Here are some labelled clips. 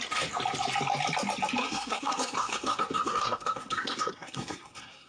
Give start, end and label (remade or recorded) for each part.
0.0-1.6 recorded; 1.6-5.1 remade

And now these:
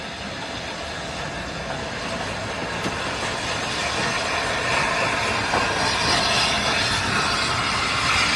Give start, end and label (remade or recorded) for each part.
0.0-8.4 recorded

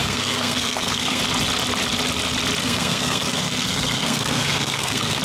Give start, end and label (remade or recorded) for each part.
0.0-1.2 remade; 1.2-2.6 recorded; 2.6-5.2 remade

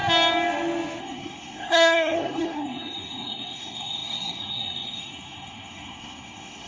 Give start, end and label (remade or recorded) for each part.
0.0-1.0 recorded; 1.0-6.7 remade

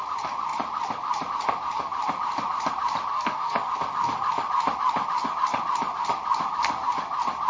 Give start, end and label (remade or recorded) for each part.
0.0-3.1 recorded; 3.1-3.7 remade; 3.7-7.5 recorded

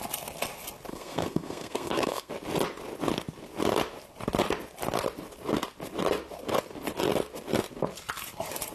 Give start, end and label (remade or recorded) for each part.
0.0-0.9 recorded; 0.9-2.3 remade; 2.3-8.7 recorded

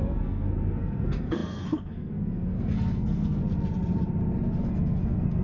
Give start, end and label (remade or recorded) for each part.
0.0-3.4 remade; 3.4-4.6 recorded; 4.6-5.4 remade

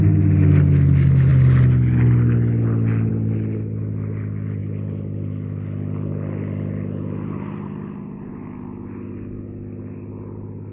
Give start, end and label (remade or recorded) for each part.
0.0-10.7 recorded